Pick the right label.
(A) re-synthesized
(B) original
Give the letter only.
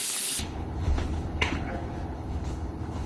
A